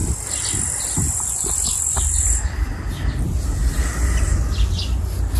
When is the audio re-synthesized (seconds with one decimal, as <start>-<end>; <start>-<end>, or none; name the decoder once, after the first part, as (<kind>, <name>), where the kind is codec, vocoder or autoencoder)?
0.0-3.2 (vocoder, BigVGAN v2)